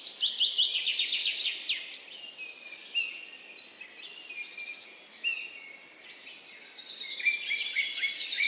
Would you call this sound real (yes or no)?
no